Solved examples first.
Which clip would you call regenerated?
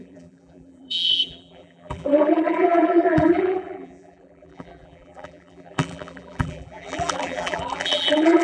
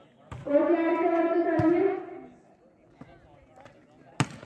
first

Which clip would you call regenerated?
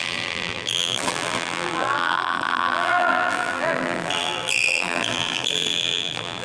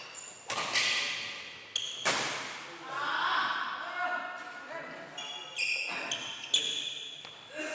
first